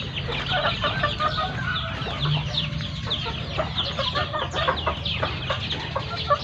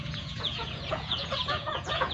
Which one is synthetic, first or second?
second